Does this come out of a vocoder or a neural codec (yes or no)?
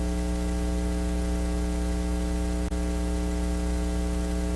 no